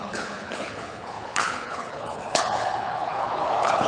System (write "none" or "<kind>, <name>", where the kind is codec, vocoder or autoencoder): codec, HILCodec